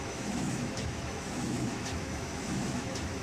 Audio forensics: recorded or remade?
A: remade